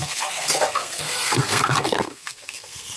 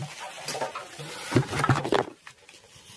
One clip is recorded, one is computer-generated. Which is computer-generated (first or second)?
first